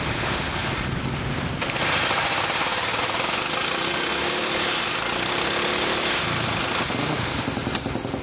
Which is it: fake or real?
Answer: real